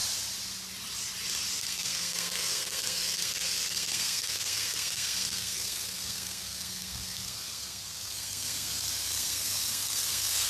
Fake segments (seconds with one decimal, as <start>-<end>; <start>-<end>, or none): 1.5-10.5